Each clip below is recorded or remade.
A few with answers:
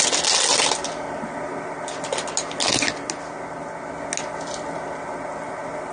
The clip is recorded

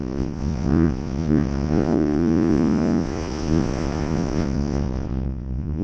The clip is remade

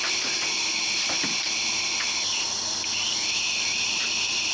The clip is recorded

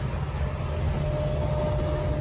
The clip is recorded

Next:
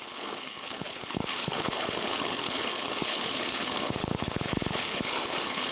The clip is remade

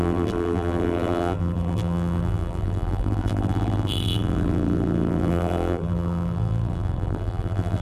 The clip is remade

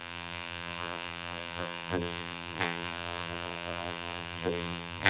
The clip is remade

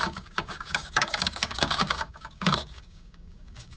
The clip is remade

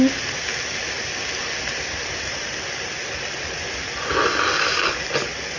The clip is recorded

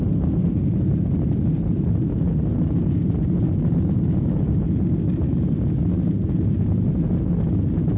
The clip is recorded